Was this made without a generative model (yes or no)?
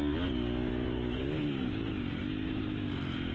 yes